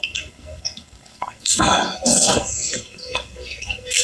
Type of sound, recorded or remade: remade